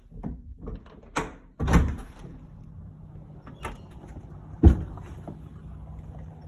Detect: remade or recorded recorded